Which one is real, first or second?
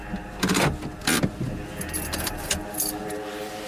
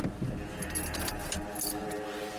second